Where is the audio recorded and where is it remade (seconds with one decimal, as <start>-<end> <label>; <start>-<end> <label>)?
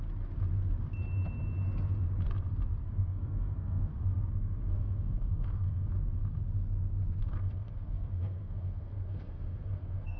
0.0-2.8 recorded; 2.8-6.2 remade; 6.2-7.2 recorded; 7.2-10.2 remade